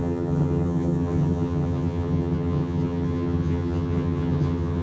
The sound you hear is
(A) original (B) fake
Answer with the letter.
B